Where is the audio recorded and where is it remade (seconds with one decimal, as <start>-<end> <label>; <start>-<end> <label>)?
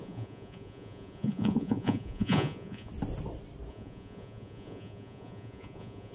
0.0-2.9 remade; 2.9-3.7 recorded; 3.7-6.1 remade